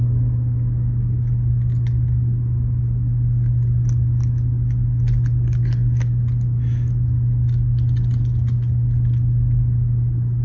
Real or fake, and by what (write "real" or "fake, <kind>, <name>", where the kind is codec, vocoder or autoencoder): real